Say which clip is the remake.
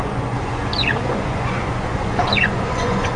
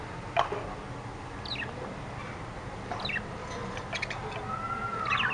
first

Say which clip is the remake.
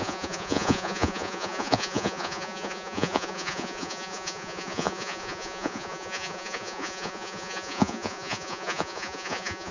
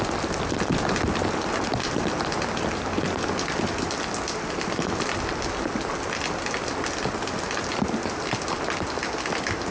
first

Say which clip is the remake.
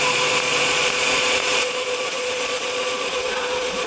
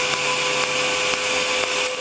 first